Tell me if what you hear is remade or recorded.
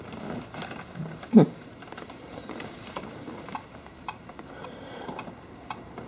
remade